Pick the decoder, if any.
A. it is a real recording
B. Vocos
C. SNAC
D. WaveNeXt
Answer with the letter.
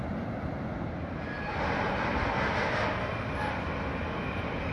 A